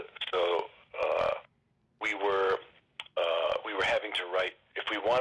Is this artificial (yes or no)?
no